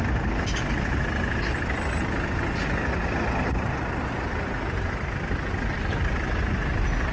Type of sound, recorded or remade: recorded